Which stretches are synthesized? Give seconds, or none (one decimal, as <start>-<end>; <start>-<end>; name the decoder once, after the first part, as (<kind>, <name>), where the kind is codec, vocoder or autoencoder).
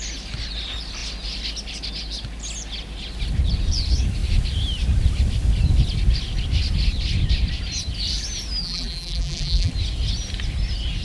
8.6-9.7 (vocoder, BigVGAN v2)